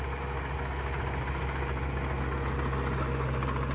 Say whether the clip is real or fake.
real